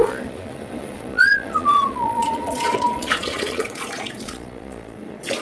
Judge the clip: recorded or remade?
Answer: remade